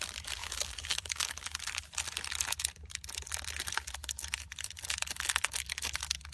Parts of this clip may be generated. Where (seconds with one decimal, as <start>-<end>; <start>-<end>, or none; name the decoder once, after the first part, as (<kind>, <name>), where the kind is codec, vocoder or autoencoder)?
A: 0.4-1.6 (codec, DAC)